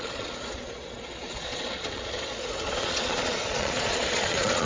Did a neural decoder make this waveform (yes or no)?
yes